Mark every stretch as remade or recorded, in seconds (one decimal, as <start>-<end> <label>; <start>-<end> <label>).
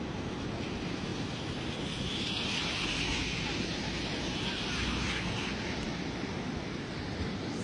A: 0.0-7.6 recorded